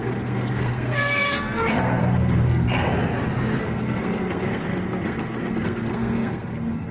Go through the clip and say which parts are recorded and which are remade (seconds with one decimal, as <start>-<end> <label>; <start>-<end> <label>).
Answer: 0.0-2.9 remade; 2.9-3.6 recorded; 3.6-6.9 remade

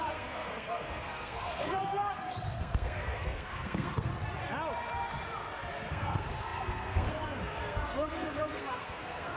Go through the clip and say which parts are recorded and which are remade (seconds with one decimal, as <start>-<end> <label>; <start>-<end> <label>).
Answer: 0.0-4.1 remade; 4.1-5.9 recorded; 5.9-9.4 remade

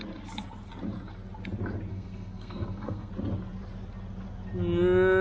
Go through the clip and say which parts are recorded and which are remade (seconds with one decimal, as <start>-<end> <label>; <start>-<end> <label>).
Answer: 0.0-1.9 recorded; 1.9-3.1 remade; 3.1-5.2 recorded